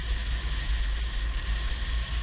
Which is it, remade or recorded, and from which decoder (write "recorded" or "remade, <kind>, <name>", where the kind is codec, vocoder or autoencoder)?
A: recorded